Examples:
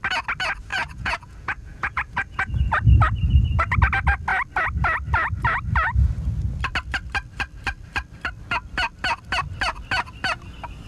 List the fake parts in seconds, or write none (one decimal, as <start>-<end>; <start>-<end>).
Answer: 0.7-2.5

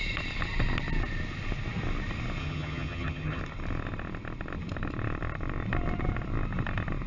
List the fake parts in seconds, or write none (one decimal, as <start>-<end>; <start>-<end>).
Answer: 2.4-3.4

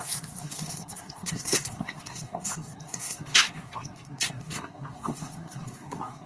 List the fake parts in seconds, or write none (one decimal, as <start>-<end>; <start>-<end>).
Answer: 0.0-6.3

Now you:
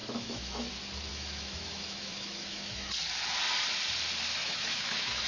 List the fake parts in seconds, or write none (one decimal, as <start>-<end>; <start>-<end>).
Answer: 0.0-0.7; 1.1-2.9; 4.4-5.3

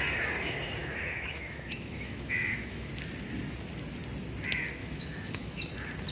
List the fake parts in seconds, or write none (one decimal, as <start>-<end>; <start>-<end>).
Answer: 0.8-2.9; 4.8-5.6

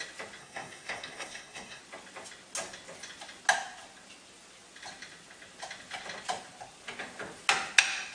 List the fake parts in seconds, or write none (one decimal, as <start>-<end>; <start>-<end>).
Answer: 0.4-1.8

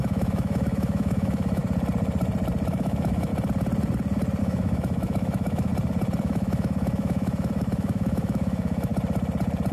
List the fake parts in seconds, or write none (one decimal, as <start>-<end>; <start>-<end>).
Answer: 0.0-1.6; 2.7-3.3; 4.4-5.7; 6.2-8.9

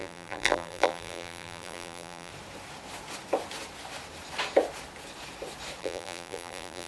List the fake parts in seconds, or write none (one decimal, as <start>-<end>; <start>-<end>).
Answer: 0.0-2.3; 5.8-6.9